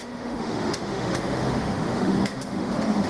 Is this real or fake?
fake